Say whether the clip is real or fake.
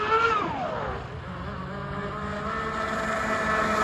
real